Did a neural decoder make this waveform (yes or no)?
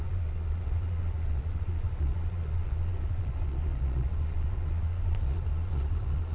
yes